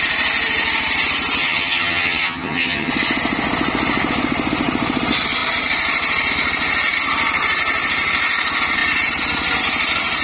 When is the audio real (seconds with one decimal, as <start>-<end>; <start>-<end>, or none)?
0.0-1.4; 2.9-10.2